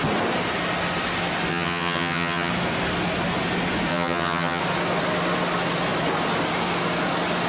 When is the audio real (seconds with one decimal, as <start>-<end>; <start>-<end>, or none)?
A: 0.0-1.5; 2.5-3.9; 4.6-7.5